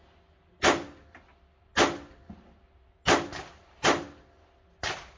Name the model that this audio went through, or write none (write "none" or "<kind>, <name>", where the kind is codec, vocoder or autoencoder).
none